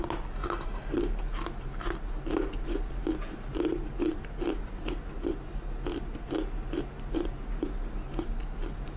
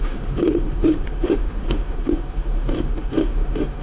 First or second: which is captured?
first